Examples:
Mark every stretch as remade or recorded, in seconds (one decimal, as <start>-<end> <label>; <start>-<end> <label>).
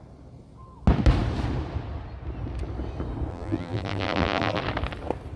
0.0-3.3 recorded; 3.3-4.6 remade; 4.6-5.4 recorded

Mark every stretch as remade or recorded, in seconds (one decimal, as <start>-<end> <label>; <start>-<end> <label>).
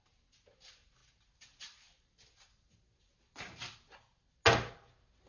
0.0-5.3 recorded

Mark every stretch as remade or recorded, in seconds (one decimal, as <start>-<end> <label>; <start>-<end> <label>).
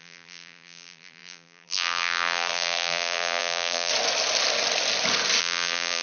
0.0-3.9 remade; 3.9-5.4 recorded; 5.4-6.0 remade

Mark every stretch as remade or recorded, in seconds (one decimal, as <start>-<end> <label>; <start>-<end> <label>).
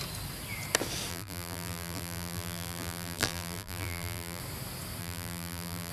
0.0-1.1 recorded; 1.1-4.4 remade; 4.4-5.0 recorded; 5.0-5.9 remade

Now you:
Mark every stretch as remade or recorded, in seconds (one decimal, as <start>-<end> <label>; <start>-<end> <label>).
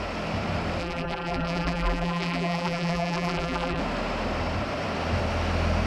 0.0-0.8 recorded; 0.8-3.8 remade; 3.8-5.9 recorded